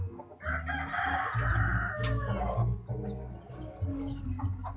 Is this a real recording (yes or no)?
yes